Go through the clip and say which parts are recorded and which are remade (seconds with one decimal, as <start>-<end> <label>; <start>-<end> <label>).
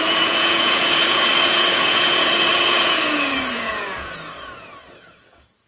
0.0-5.7 remade